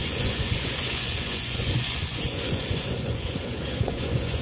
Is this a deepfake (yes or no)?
yes